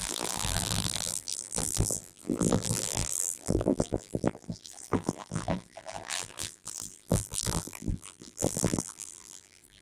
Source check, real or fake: fake